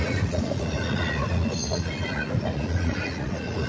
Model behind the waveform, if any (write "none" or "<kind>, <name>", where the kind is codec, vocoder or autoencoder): vocoder, Vocos